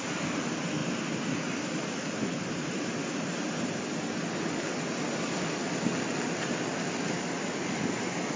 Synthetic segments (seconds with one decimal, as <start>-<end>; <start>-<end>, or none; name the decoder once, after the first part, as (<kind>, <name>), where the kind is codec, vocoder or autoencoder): none